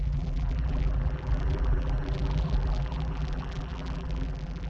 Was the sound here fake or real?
fake